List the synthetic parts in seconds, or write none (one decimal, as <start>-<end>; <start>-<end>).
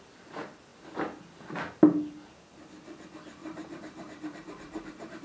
3.4-5.2